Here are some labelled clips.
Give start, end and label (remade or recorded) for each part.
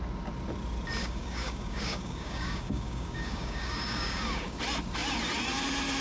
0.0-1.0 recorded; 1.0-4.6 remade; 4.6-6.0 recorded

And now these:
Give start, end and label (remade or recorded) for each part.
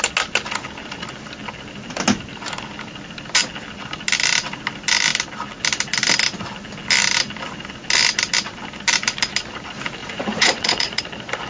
0.0-10.0 recorded; 10.0-11.0 remade; 11.0-11.5 recorded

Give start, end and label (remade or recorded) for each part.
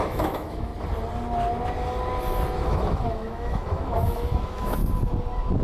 0.0-0.7 remade; 0.7-2.6 recorded; 2.6-4.8 remade; 4.8-5.6 recorded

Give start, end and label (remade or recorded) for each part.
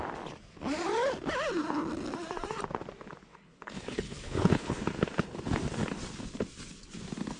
0.0-3.3 recorded; 3.3-4.8 remade; 4.8-7.4 recorded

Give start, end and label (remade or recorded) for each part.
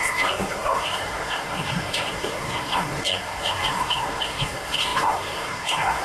0.0-6.0 remade